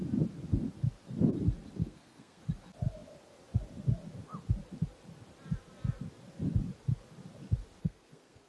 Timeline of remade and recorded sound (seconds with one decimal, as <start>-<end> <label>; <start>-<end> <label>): 0.0-1.8 recorded; 1.8-2.4 remade; 2.4-7.8 recorded; 7.8-8.5 remade